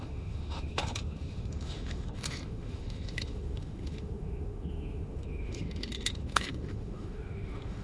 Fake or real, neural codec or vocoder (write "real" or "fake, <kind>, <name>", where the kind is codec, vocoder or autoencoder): fake, autoencoder, DAC-VAE